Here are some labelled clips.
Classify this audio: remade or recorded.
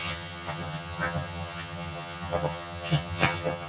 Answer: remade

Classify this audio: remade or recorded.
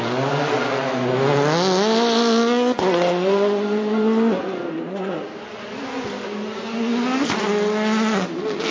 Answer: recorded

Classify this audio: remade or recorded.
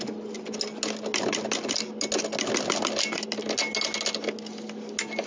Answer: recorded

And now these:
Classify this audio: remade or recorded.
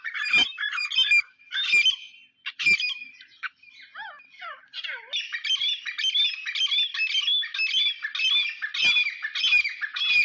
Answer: recorded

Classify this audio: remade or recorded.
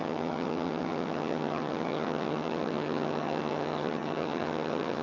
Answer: remade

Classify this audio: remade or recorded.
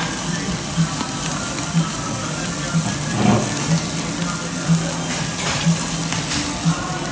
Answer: recorded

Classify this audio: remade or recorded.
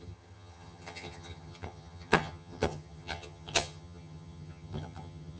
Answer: remade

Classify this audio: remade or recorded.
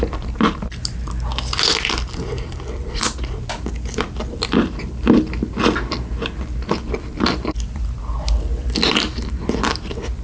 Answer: recorded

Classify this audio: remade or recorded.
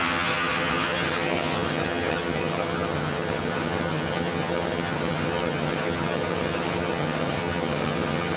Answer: remade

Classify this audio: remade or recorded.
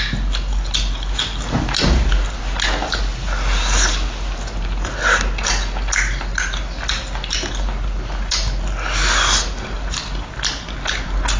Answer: recorded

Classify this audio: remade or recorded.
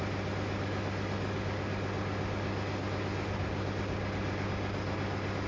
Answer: recorded